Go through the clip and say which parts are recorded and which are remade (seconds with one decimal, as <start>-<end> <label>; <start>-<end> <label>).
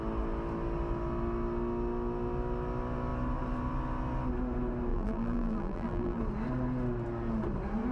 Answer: 0.0-4.9 recorded; 4.9-6.2 remade; 6.2-7.9 recorded